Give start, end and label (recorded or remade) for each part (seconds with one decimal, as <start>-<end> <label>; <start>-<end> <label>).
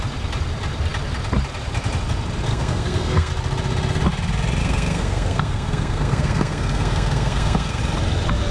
0.0-2.5 recorded; 2.5-3.3 remade; 3.3-4.6 recorded; 4.6-7.8 remade; 7.8-8.5 recorded